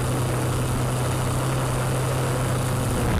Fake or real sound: real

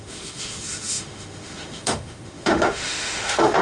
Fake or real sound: fake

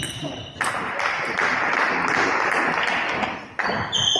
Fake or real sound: real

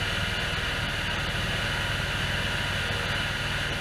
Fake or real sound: real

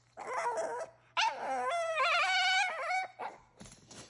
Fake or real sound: real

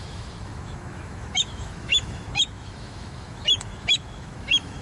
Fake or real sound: fake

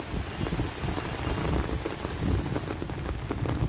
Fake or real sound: real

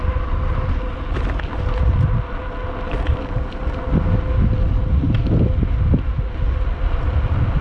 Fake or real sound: real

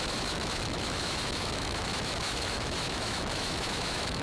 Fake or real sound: fake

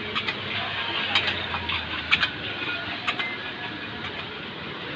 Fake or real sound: real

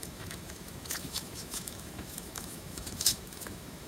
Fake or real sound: fake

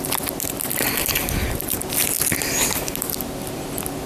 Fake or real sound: real